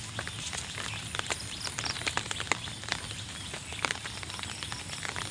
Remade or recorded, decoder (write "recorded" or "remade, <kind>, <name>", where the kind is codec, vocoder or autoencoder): recorded